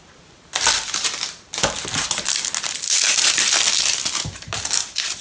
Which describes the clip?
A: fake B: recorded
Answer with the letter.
B